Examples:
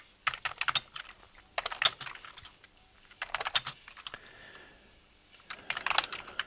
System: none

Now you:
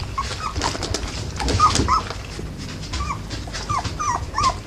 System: none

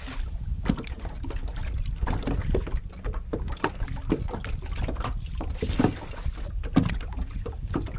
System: none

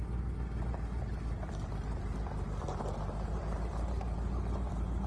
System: none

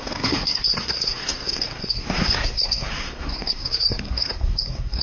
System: codec, SNAC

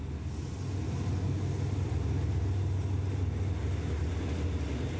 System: none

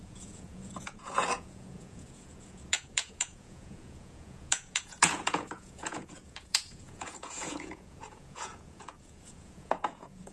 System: vocoder, Vocos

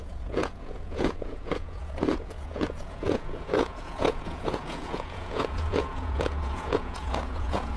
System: vocoder, Vocos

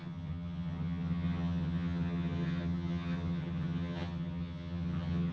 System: vocoder, HiFi-GAN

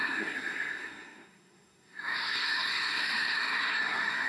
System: codec, SNAC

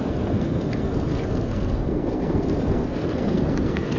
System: codec, SNAC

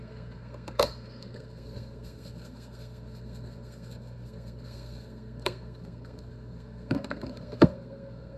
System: codec, SNAC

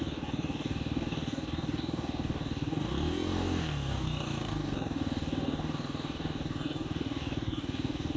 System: codec, DAC